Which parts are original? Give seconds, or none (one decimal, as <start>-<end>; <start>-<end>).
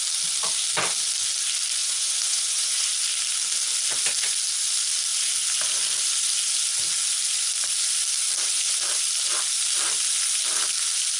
0.0-1.8; 2.9-11.2